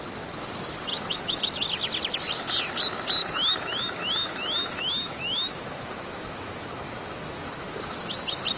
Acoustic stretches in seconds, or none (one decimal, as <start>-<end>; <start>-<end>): 0.0-0.9; 1.4-3.2; 7.8-8.6